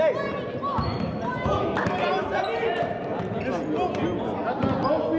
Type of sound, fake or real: real